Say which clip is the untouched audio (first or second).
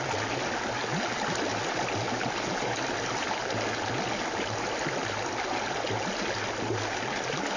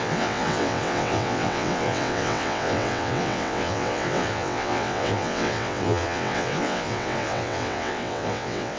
first